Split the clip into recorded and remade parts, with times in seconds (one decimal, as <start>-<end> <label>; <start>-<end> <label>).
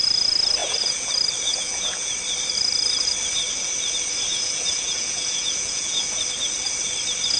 0.0-0.6 recorded; 0.6-1.1 remade; 1.1-1.5 recorded; 1.5-2.1 remade; 2.1-4.3 recorded; 4.3-6.2 remade; 6.2-7.4 recorded